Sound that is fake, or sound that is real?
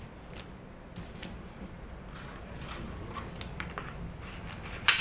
real